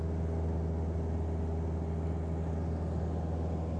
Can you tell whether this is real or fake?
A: real